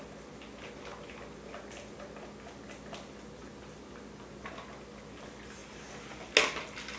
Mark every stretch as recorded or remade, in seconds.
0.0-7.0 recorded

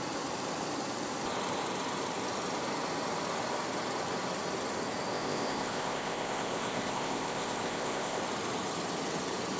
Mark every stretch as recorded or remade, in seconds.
0.0-5.1 recorded; 5.1-8.2 remade; 8.2-9.6 recorded

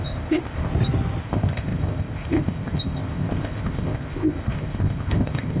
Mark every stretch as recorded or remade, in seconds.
0.0-0.7 remade; 0.7-1.2 recorded; 1.2-5.6 remade

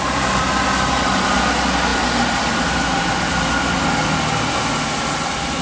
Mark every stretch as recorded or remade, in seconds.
0.0-5.6 recorded

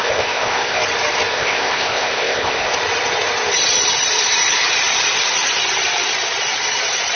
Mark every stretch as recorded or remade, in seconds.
0.0-0.8 remade; 0.8-1.3 recorded; 1.3-2.7 remade; 2.7-7.2 recorded

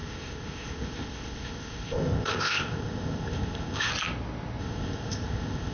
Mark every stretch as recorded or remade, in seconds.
0.0-3.9 remade; 3.9-4.6 recorded; 4.6-5.7 remade

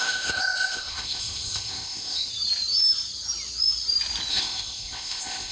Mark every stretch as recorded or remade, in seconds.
0.0-2.3 remade; 2.3-4.3 recorded; 4.3-5.5 remade

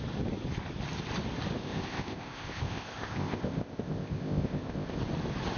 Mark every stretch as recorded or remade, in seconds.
0.0-1.6 recorded; 1.6-5.0 remade; 5.0-5.6 recorded